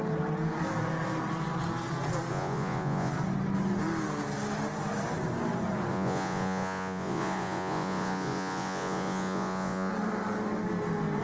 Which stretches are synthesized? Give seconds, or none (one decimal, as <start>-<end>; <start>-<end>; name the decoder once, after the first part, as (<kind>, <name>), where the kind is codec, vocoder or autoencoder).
2.3-3.1 (vocoder, Vocos); 5.9-9.9